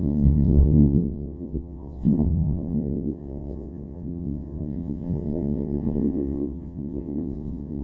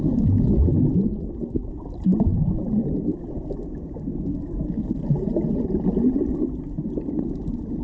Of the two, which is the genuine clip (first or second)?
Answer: second